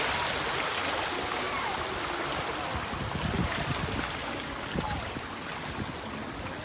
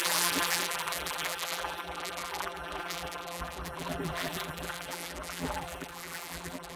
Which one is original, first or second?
first